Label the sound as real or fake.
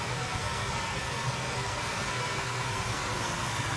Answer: fake